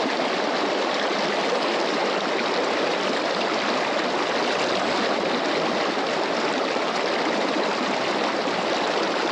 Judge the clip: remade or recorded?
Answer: recorded